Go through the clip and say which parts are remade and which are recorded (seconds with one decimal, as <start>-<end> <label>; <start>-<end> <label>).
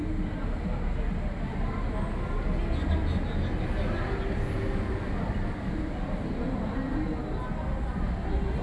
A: 0.0-8.6 recorded